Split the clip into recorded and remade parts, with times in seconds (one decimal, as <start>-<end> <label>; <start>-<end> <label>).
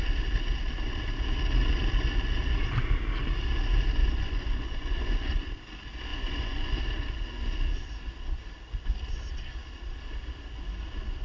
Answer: 0.0-4.0 recorded; 4.0-5.3 remade; 5.3-6.1 recorded; 6.1-6.8 remade; 6.8-11.2 recorded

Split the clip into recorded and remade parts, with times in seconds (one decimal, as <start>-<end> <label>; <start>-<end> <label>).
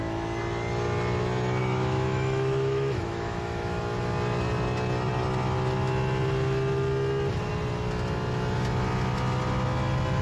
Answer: 0.0-1.6 recorded; 1.6-3.8 remade; 3.8-10.2 recorded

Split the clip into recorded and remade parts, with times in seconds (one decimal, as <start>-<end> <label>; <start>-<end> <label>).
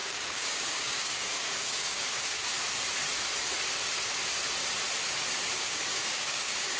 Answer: 0.0-2.5 remade; 2.5-5.5 recorded; 5.5-6.8 remade